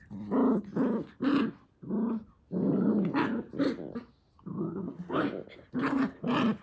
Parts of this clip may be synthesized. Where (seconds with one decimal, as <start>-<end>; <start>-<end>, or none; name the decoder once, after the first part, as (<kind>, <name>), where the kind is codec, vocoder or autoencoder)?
4.6-5.2 (codec, SNAC)